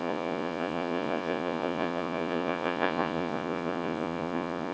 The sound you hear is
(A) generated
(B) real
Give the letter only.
A